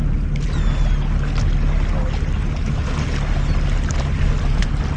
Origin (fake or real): real